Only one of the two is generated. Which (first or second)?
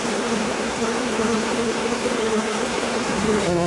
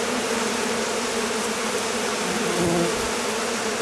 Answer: first